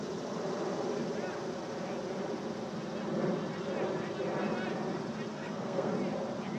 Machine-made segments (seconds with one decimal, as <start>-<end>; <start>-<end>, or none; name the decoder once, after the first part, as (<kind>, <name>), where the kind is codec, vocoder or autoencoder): 5.3-5.9 (codec, SNAC)